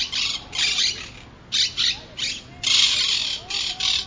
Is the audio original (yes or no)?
yes